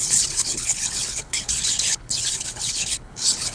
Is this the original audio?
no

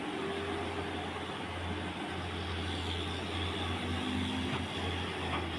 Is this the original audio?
yes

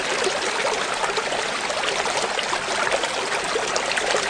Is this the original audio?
yes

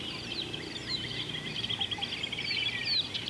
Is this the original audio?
yes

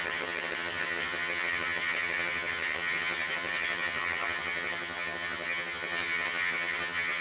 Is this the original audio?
no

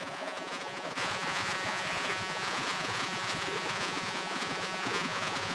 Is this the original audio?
no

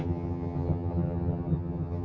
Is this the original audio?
no